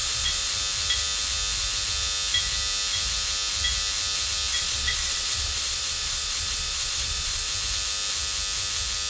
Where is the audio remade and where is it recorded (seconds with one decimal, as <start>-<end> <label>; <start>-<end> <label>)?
0.0-0.5 remade; 0.5-4.5 recorded; 4.5-7.5 remade; 7.5-9.1 recorded